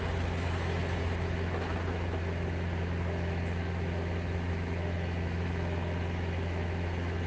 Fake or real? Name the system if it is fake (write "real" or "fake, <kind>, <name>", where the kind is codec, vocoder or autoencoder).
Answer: fake, autoencoder, DAC-VAE